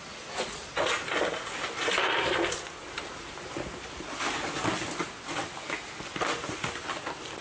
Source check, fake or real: real